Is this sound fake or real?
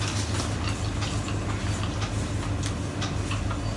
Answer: real